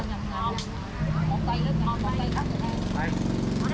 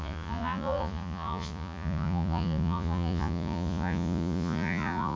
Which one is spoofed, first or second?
second